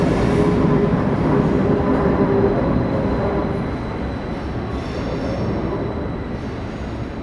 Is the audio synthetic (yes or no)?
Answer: no